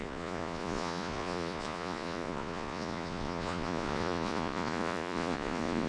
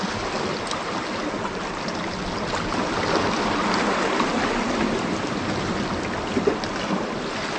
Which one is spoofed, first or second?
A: first